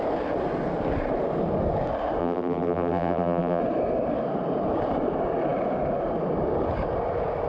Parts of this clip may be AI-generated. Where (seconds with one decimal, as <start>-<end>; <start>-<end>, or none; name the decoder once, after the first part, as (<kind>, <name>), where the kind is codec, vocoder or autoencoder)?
2.2-3.6 (vocoder, BigVGAN v2)